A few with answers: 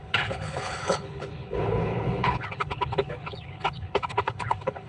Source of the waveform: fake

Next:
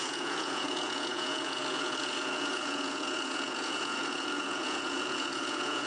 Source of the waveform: fake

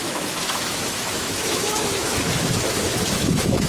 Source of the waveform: fake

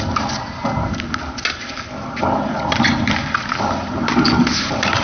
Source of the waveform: real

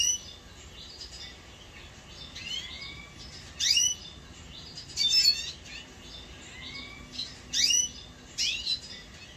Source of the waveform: real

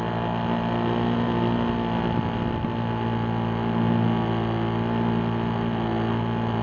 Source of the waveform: real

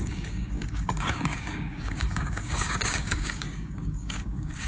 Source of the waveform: fake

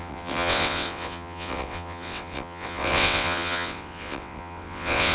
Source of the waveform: fake